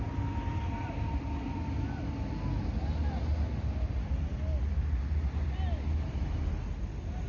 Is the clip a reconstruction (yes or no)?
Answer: no